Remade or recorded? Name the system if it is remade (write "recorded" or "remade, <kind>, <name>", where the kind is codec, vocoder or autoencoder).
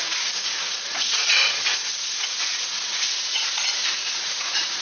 remade, vocoder, Vocos